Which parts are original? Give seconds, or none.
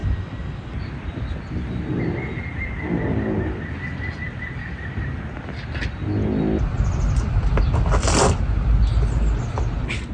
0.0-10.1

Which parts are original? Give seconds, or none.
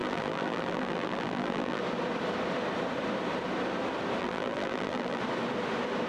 1.8-4.2; 5.2-6.1